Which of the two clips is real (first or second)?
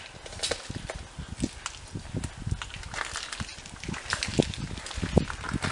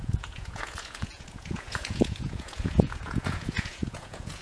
first